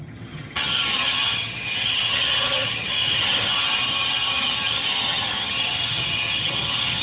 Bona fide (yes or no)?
no